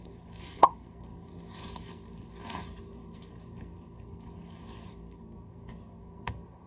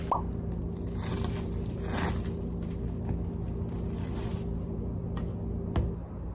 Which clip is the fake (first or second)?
first